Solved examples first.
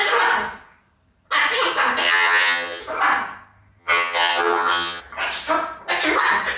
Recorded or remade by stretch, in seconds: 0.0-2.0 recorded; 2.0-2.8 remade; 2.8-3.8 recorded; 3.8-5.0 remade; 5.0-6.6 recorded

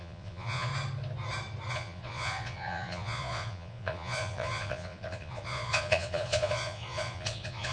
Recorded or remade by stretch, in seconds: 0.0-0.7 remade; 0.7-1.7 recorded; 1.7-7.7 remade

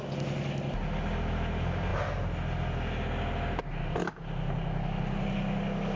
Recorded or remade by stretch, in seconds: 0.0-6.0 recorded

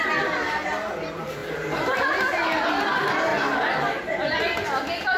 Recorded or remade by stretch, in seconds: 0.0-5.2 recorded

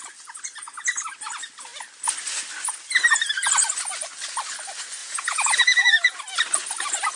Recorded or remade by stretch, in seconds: 0.0-5.0 recorded; 5.0-6.2 remade; 6.2-7.2 recorded